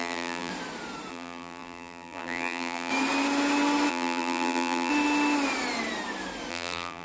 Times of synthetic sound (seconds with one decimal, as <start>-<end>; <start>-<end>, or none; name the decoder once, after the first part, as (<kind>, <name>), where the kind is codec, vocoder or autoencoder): 0.0-0.5 (vocoder, BigVGAN v2); 1.1-2.9; 3.9-4.9; 6.5-7.0